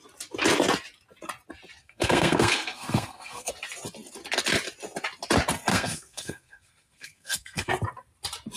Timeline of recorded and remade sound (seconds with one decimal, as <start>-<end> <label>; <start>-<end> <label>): 0.0-1.8 recorded; 1.8-3.5 remade; 3.5-5.7 recorded; 5.7-7.7 remade; 7.7-8.6 recorded

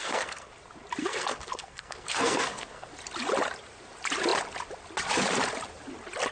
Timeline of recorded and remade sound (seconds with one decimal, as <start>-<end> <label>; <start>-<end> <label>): 0.0-0.5 remade; 0.5-1.0 recorded; 1.0-2.9 remade; 2.9-6.3 recorded

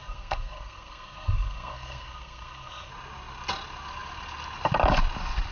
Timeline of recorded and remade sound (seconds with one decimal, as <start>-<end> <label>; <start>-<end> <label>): 0.0-2.9 remade; 2.9-5.5 recorded

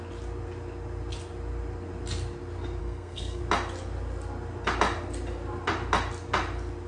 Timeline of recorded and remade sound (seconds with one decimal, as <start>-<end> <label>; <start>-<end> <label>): 0.0-2.8 recorded; 2.8-3.4 remade; 3.4-6.9 recorded

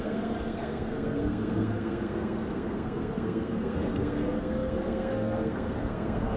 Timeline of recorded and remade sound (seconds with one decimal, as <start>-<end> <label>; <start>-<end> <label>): 0.0-6.4 remade

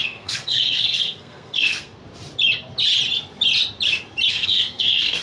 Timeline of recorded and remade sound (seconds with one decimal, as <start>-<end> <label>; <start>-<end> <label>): 0.0-2.0 remade; 2.0-4.3 recorded; 4.3-5.2 remade

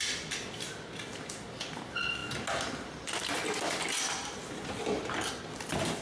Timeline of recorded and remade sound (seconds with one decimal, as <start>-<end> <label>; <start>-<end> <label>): 0.0-6.0 recorded